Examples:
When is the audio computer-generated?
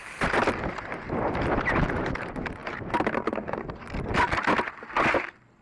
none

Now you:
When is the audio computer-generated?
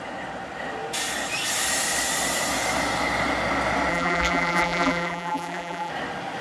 3.9-5.9 (vocoder, BigVGAN v2)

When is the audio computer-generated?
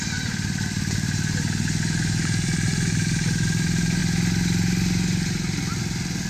0.0-4.0 (vocoder, BigVGAN v2)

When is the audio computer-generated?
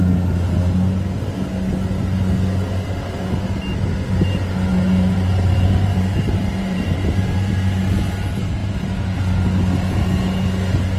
4.7-7.5 (vocoder, BigVGAN v2); 8.6-9.2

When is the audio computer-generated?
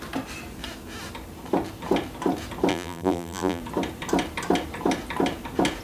2.7-3.6 (vocoder, BigVGAN v2)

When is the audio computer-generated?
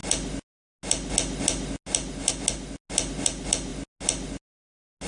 none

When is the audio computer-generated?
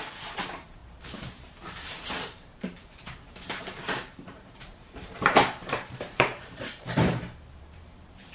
0.0-8.3 (vocoder, BigVGAN v2)